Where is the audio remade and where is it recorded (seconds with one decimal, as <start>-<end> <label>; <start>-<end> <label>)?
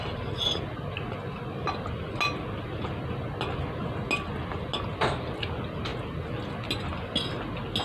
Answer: 0.0-7.8 recorded